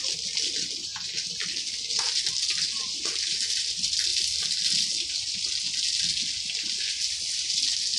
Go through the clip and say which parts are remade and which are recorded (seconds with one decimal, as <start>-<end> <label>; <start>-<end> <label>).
0.0-8.0 recorded